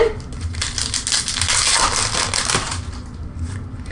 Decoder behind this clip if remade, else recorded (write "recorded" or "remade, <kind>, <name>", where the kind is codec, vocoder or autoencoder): recorded